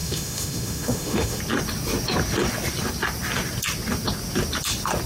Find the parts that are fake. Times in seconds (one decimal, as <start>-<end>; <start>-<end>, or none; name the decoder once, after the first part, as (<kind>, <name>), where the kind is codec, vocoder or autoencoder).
0.0-1.4 (autoencoder, DAC-VAE)